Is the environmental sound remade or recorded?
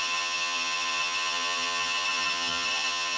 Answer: remade